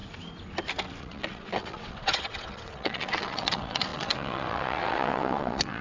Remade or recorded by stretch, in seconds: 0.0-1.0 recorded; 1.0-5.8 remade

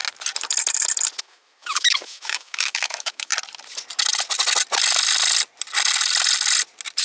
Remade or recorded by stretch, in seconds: 0.0-1.2 recorded; 1.2-3.3 remade; 3.3-7.0 recorded

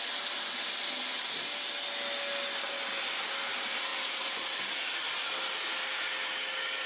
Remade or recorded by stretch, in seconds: 0.0-6.9 recorded

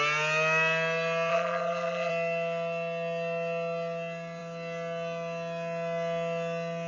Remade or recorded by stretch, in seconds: 0.0-1.3 recorded; 1.3-2.1 remade; 2.1-6.9 recorded